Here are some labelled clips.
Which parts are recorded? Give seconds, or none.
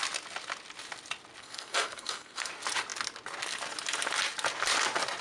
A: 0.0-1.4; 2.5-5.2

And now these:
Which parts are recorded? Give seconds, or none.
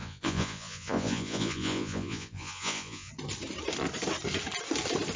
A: 3.1-5.2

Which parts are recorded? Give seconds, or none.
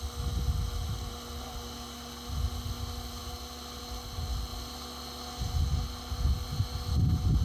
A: 0.0-7.4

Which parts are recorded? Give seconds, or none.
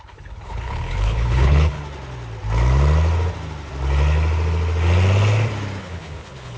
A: 1.8-5.8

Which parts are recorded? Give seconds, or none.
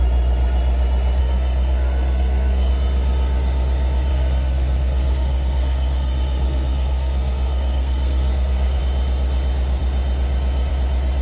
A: 0.0-1.2; 2.7-4.1; 8.8-11.2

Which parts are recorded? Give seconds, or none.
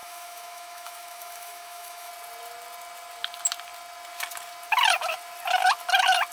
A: 2.1-6.3